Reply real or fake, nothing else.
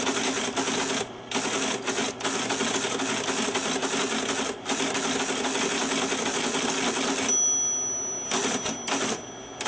real